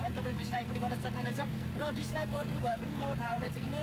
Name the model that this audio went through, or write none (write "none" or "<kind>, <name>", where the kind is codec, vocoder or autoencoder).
codec, SNAC